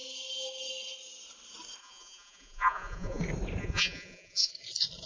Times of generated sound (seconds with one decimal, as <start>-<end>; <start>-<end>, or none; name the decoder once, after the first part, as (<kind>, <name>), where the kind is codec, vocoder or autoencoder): 1.8-3.2 (vocoder, Vocos); 3.6-4.5